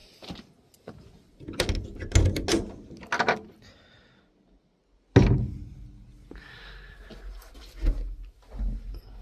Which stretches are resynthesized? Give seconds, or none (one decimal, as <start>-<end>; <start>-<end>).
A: 0.0-0.5